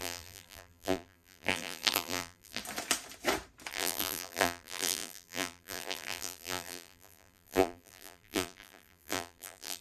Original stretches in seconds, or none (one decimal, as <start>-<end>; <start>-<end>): 2.6-3.7